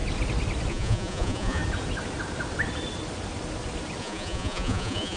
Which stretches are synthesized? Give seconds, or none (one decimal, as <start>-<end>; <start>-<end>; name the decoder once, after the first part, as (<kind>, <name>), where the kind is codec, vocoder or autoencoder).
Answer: 0.7-1.6 (vocoder, Vocos); 4.0-5.2